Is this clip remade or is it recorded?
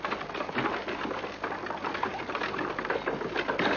recorded